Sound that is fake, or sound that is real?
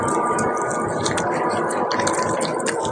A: real